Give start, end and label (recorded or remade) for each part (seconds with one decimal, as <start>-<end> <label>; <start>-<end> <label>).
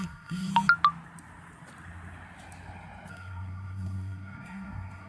0.0-0.5 remade; 0.5-3.1 recorded; 3.1-5.1 remade